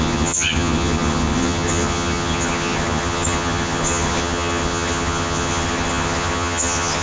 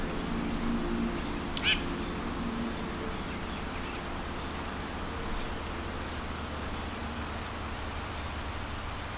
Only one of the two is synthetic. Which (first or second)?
first